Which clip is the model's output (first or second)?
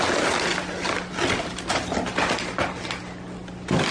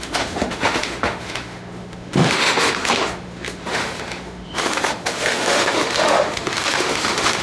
second